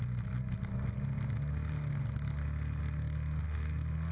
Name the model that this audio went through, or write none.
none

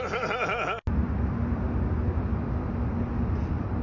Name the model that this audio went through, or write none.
none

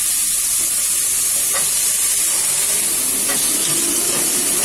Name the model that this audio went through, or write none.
none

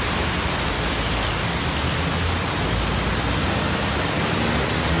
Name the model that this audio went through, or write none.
none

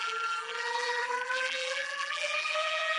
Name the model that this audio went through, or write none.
vocoder, BigVGAN v2